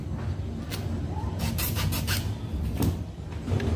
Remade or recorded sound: recorded